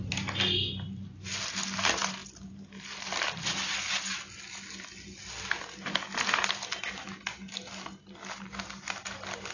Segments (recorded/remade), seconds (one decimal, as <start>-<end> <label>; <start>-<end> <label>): 0.0-9.5 recorded